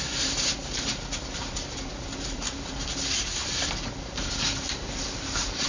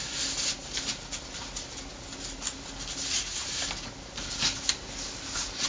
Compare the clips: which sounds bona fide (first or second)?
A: second